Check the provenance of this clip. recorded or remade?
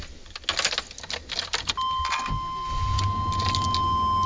recorded